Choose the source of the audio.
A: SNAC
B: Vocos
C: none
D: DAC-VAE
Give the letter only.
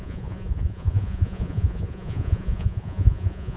B